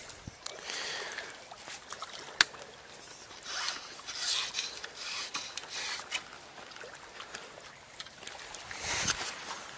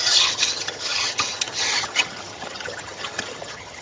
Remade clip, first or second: second